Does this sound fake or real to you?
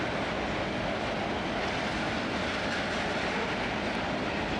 real